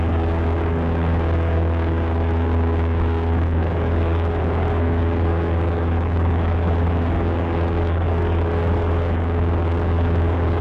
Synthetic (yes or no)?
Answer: yes